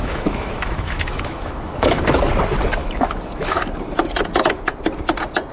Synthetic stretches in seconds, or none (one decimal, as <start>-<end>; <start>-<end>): 0.0-2.0; 2.8-3.6

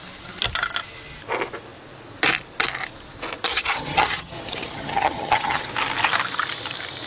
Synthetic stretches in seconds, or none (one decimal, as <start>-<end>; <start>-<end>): 3.5-5.7

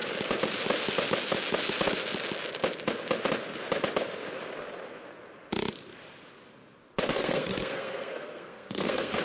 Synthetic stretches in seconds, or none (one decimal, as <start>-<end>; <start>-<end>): 7.1-9.2

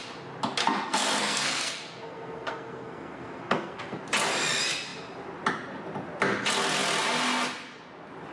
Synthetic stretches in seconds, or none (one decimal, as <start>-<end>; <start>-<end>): 0.6-4.0

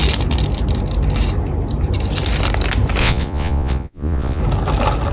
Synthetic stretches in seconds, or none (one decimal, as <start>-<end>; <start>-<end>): 3.0-4.4

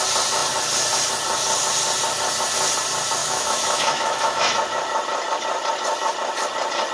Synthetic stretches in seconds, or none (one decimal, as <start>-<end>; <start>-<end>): 3.2-4.4

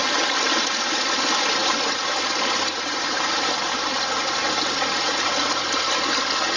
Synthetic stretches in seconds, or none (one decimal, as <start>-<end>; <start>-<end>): 0.0-0.7; 1.6-5.6